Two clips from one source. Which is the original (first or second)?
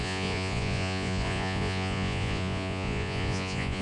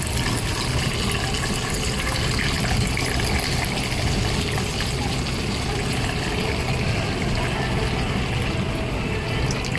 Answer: second